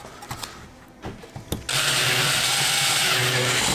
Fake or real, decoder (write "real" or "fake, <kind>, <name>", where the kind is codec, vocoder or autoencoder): real